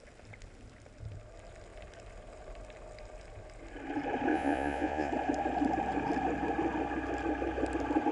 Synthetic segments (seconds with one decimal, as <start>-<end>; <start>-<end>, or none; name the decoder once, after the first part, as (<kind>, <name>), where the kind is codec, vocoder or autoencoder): 4.3-5.1 (vocoder, Vocos)